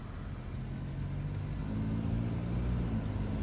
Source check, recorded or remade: recorded